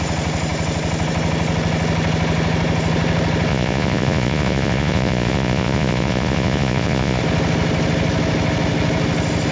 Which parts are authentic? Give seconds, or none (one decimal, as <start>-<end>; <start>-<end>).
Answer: 0.0-3.5; 7.2-9.5